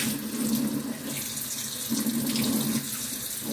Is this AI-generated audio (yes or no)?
no